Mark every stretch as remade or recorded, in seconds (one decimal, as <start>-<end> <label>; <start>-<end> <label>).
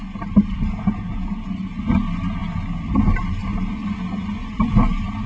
0.0-5.3 recorded